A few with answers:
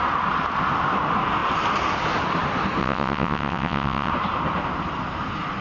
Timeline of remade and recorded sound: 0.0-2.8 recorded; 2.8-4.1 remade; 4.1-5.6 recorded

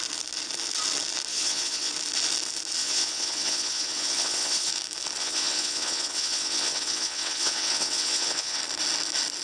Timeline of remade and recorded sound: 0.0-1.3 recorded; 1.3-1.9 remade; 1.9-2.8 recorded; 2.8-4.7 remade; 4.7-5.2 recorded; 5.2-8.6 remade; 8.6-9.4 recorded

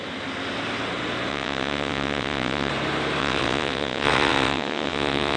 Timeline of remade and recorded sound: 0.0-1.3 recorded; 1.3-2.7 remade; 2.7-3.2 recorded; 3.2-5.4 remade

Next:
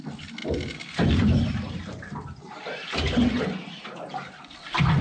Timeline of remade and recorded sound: 0.0-5.0 recorded

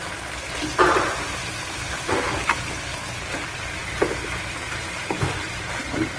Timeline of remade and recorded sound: 0.0-6.2 recorded